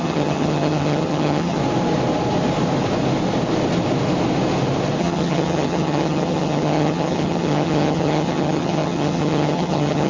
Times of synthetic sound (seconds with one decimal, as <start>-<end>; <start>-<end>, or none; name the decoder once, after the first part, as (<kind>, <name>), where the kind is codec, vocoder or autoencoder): 0.0-1.6 (vocoder, HiFi-GAN); 5.0-10.1